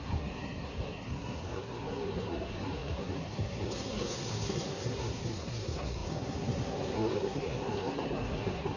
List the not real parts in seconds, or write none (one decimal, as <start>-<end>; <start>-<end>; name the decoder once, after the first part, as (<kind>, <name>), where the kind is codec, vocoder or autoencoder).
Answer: 0.0-8.8 (codec, SNAC)